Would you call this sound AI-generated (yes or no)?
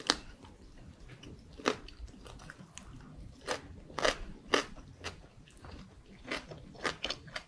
no